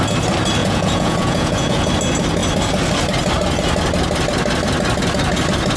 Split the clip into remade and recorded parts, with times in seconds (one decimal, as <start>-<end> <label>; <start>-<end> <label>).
0.0-0.6 recorded; 0.6-1.9 remade; 1.9-5.8 recorded